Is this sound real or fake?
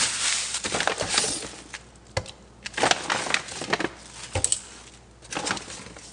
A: real